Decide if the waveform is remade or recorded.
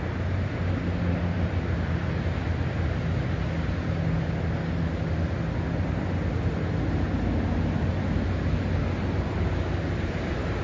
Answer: recorded